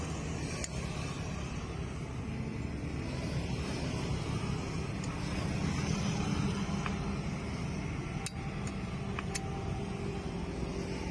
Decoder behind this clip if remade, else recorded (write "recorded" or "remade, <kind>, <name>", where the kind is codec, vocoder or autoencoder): recorded